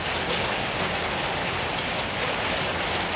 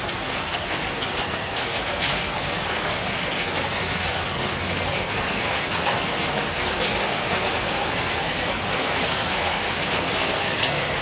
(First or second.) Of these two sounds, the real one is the first